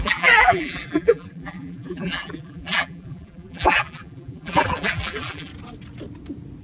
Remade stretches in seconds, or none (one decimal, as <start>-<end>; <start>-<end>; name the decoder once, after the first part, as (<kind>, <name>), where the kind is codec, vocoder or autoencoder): 0.0-5.5 (vocoder, BigVGAN v2)